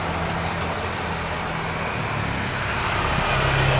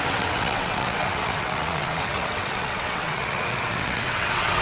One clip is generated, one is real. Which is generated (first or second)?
second